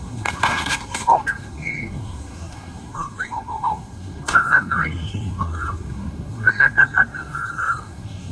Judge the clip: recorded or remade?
remade